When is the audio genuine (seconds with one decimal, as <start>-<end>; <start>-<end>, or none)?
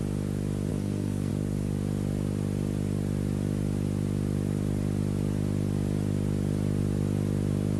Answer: 0.0-0.7; 1.3-7.8